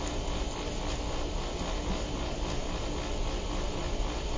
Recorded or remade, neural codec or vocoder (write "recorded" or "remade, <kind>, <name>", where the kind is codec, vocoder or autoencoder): recorded